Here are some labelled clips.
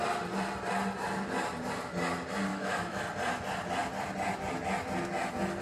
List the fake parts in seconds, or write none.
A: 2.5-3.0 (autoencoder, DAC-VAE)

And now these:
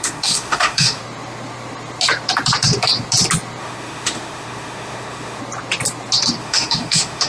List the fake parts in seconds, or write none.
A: 0.0-1.0 (autoencoder, DAC-VAE); 3.6-5.4; 6.4-7.3

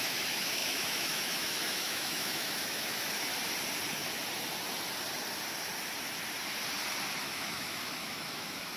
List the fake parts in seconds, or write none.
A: 0.0-3.3 (autoencoder, DAC-VAE); 7.2-8.8